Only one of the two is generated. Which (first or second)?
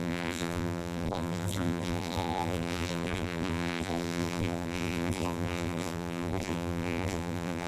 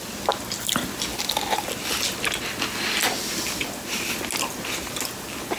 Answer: first